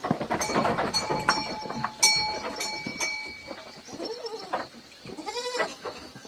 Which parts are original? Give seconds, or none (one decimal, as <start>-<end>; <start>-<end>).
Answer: 0.0-5.7